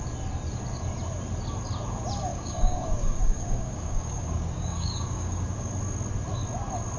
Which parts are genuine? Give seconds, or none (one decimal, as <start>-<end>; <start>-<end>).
0.0-2.3; 5.7-7.0